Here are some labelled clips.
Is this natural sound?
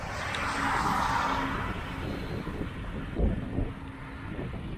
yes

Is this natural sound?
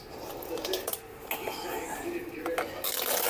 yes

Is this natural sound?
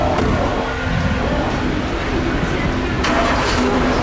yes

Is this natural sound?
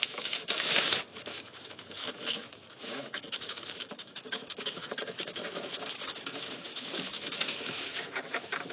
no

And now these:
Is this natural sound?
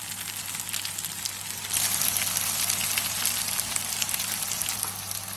yes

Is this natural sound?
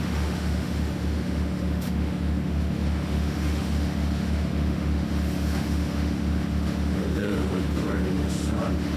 no